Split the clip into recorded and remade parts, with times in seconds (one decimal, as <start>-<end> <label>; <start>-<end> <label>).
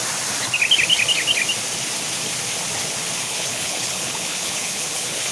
0.0-3.2 recorded; 3.2-5.3 remade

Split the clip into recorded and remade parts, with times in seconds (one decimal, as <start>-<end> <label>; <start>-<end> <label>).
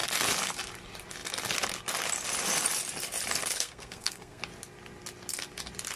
0.0-3.4 recorded; 3.4-4.4 remade; 4.4-6.0 recorded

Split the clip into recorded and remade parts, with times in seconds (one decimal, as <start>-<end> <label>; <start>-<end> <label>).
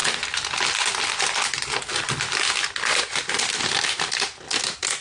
0.0-5.0 recorded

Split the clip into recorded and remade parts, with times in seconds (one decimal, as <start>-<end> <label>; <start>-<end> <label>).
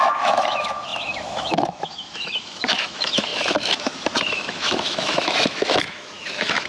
0.0-6.7 remade